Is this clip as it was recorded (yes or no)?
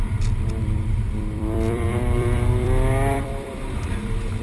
no